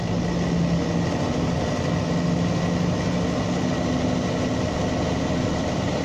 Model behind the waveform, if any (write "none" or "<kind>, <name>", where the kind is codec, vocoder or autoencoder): none